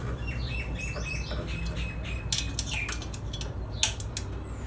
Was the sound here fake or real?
real